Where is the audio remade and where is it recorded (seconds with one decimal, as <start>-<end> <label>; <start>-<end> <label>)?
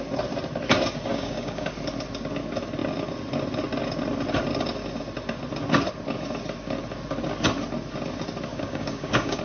0.0-1.1 recorded; 1.1-1.7 remade; 1.7-8.5 recorded; 8.5-9.4 remade